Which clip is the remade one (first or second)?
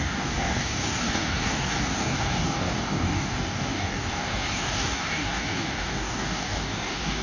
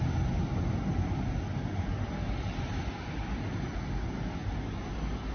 first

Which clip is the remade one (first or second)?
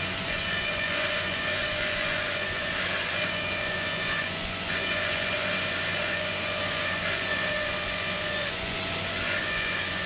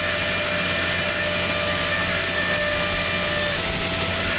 first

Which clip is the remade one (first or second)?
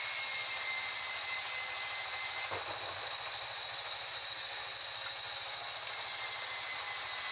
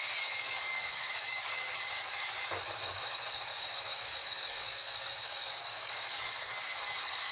second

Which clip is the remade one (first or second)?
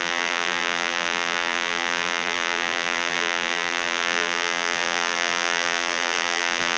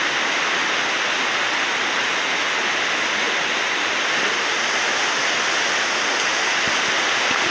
first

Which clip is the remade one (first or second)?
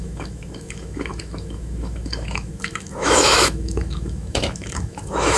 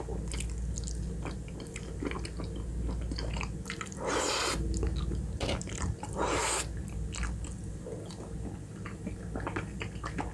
first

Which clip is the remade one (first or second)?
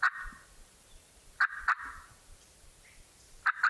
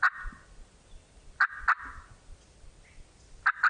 first